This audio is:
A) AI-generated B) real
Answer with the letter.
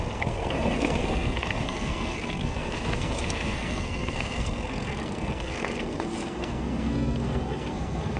A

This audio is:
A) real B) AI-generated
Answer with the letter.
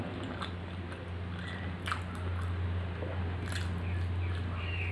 A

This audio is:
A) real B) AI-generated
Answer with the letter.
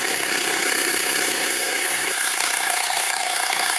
B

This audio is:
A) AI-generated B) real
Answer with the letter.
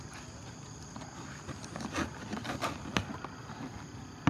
B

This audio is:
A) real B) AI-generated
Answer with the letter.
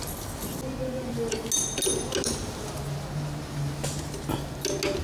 A